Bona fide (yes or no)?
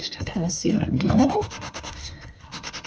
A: no